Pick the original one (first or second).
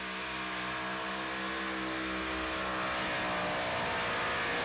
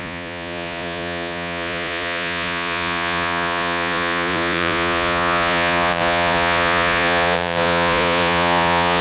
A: first